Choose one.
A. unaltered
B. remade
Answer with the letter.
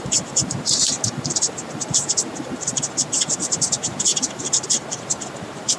B